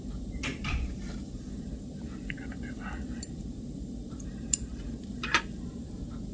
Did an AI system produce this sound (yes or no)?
yes